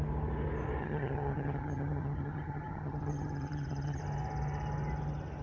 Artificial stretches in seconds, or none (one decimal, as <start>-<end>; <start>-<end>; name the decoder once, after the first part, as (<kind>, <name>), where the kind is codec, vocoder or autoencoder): 0.8-4.0 (vocoder, HiFi-GAN)